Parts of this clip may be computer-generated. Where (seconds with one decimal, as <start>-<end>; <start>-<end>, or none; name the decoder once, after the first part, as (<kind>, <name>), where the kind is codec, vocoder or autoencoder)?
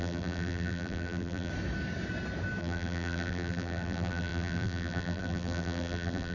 0.0-1.5 (vocoder, BigVGAN v2); 2.6-6.3